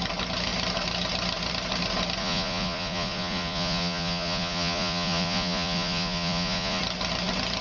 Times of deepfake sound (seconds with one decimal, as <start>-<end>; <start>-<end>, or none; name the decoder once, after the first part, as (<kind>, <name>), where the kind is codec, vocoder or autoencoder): 2.2-6.8 (vocoder, Vocos)